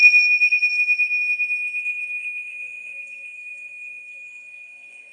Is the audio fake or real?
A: fake